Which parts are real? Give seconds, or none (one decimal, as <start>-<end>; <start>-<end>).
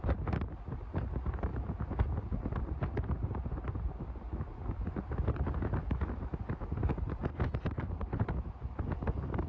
0.0-9.5